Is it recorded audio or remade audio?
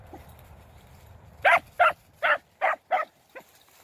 recorded